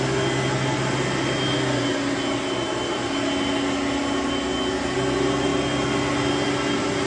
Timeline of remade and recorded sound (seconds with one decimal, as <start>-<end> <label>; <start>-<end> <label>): 0.0-7.1 recorded